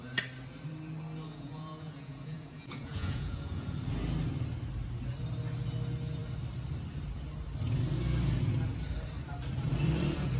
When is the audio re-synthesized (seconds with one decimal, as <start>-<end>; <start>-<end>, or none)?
1.3-3.8